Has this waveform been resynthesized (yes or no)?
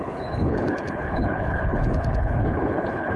yes